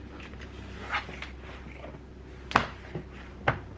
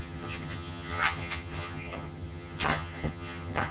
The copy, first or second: second